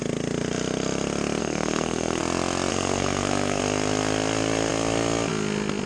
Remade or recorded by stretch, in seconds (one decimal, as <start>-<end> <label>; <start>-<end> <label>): 0.0-1.4 recorded; 1.4-2.2 remade; 2.2-2.7 recorded; 2.7-3.6 remade; 3.6-5.9 recorded